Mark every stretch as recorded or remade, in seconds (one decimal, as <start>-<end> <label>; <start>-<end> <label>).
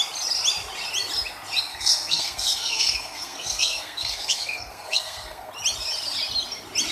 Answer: 0.0-1.7 recorded; 1.7-5.5 remade; 5.5-6.9 recorded